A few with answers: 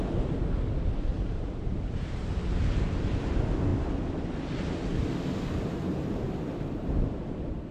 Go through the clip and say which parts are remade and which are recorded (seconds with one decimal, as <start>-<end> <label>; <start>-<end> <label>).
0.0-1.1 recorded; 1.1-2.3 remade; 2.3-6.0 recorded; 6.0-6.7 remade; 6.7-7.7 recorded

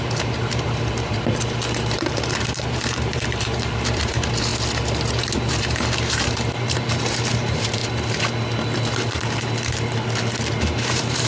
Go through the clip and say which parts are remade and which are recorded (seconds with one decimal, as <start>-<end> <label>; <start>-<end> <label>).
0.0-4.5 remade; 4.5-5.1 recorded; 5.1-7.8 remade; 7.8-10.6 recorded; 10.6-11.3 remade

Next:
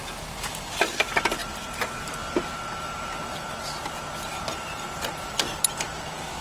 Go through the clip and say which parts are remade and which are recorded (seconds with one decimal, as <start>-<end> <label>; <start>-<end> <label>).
0.0-1.4 recorded; 1.4-5.2 remade; 5.2-6.4 recorded